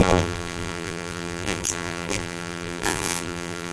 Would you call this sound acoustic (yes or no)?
no